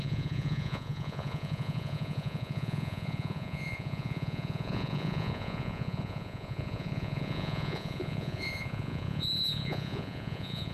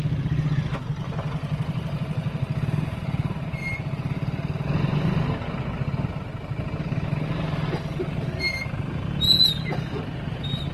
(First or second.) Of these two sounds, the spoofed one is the first